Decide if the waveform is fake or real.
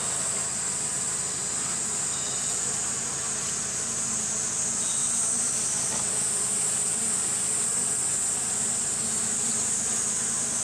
real